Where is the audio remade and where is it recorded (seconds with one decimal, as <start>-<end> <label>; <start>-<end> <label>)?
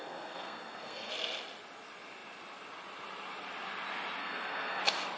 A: 0.0-1.1 remade; 1.1-4.2 recorded; 4.2-4.8 remade; 4.8-5.2 recorded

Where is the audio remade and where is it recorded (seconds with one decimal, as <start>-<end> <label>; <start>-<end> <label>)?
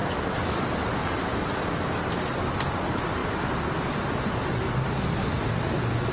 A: 0.0-6.1 recorded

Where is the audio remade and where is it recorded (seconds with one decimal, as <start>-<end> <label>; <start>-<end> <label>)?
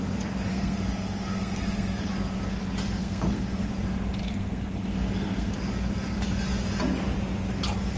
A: 0.0-0.5 recorded; 0.5-2.1 remade; 2.1-3.0 recorded; 3.0-3.7 remade; 3.7-4.2 recorded; 4.2-5.5 remade; 5.5-8.0 recorded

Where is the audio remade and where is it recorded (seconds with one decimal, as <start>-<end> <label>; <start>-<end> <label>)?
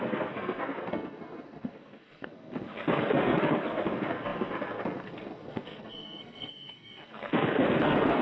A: 0.0-8.2 remade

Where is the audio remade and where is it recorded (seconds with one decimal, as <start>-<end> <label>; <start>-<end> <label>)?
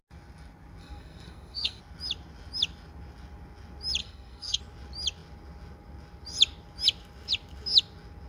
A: 0.0-0.8 recorded; 0.8-1.8 remade; 1.8-4.0 recorded; 4.0-4.6 remade; 4.6-8.3 recorded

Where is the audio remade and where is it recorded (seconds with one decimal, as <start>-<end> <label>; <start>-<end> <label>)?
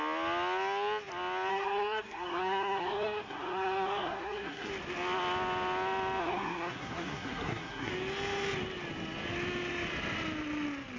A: 0.0-1.5 recorded; 1.5-4.7 remade; 4.7-6.2 recorded; 6.2-7.9 remade; 7.9-11.0 recorded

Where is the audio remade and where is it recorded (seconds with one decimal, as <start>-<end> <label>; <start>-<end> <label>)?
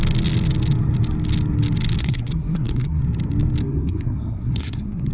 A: 0.0-2.0 recorded; 2.0-3.0 remade; 3.0-3.6 recorded; 3.6-5.1 remade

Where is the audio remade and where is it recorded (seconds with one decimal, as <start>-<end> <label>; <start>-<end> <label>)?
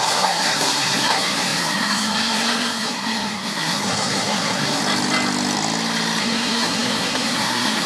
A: 0.0-4.8 remade; 4.8-6.2 recorded; 6.2-7.9 remade